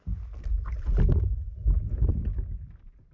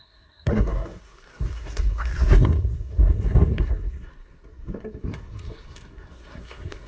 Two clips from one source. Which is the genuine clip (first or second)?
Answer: first